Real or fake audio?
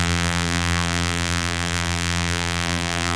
fake